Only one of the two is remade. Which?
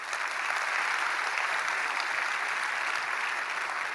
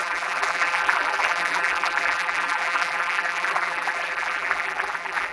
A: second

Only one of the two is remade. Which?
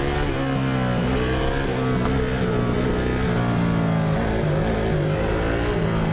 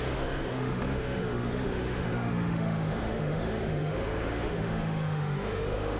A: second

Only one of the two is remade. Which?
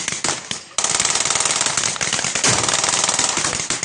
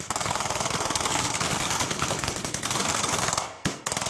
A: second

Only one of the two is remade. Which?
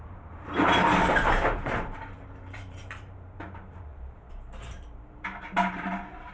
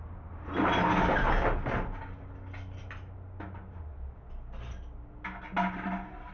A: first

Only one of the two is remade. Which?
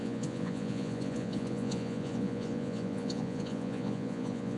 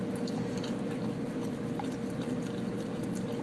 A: first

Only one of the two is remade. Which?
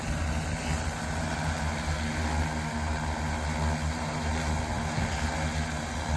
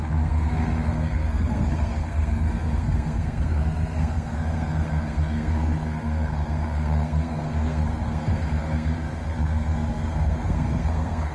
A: second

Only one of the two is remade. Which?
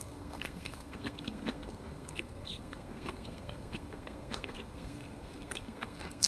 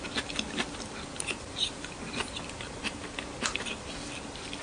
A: first